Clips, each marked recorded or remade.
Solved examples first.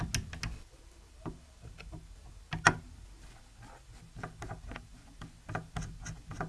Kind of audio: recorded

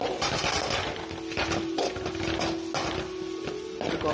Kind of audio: recorded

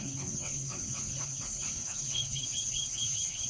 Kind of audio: remade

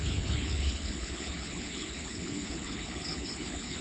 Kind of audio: remade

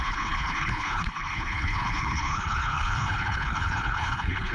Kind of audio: remade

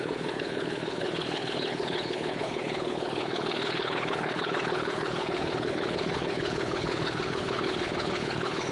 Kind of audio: remade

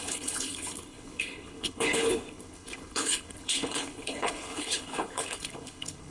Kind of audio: remade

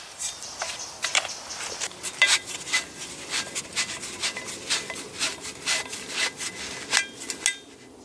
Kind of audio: recorded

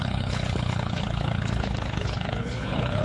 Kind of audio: remade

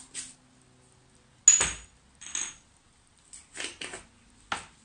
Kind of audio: recorded